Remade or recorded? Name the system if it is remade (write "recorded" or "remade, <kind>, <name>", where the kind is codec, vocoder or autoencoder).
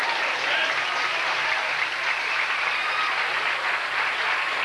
recorded